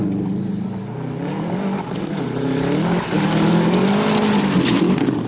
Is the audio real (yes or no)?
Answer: yes